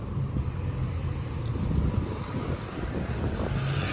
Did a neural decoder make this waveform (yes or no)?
no